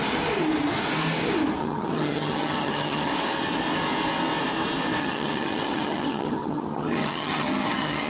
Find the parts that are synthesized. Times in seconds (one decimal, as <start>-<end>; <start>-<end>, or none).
1.6-3.1; 5.0-8.1